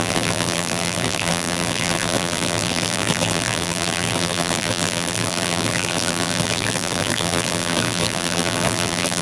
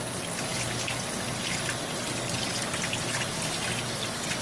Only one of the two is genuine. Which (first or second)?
second